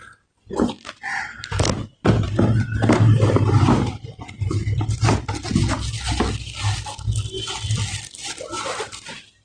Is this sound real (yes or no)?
yes